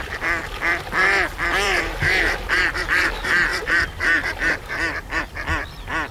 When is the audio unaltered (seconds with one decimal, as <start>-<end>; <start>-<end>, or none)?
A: 1.0-1.5